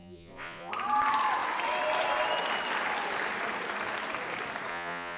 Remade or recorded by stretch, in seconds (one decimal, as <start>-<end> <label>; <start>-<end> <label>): 0.0-0.7 remade; 0.7-4.7 recorded; 4.7-5.2 remade

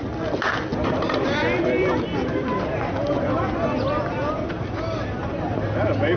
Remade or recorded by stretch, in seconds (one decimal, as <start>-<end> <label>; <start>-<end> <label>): 0.0-0.7 recorded; 0.7-4.3 remade; 4.3-6.2 recorded

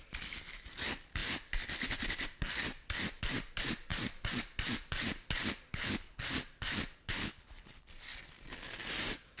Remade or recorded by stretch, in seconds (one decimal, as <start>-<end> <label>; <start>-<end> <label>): 0.0-5.7 recorded; 5.7-6.2 remade; 6.2-7.2 recorded; 7.2-7.9 remade; 7.9-9.4 recorded

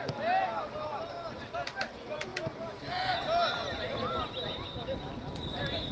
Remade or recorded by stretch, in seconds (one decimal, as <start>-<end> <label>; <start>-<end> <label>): 0.0-5.9 recorded

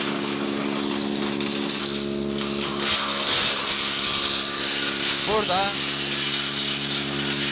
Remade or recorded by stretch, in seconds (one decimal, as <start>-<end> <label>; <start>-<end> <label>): 0.0-7.5 recorded

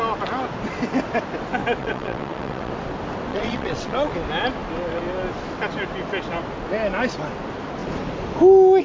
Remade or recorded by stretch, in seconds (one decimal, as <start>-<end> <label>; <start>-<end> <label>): 0.0-1.8 recorded; 1.8-2.7 remade; 2.7-3.3 recorded; 3.3-4.1 remade; 4.1-8.8 recorded